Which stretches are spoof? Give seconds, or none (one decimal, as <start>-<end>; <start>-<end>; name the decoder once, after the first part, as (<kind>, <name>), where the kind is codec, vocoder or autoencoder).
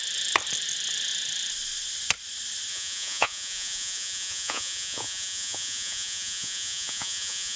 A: 2.7-7.6 (vocoder, Vocos)